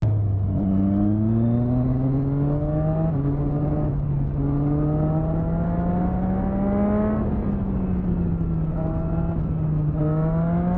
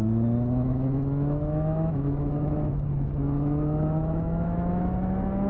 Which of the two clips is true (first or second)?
first